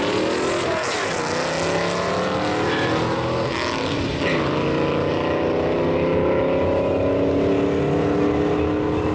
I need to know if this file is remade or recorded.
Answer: recorded